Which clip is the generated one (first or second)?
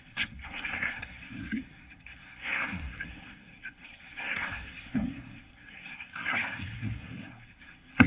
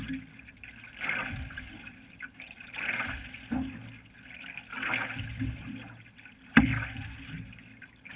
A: first